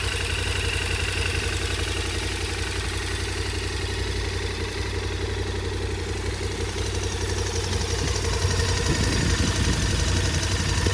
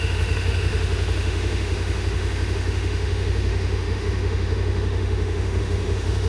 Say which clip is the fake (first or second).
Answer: second